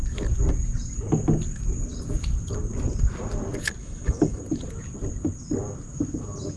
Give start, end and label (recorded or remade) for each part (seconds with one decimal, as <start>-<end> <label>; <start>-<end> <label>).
0.0-3.8 recorded; 3.8-4.4 remade; 4.4-6.6 recorded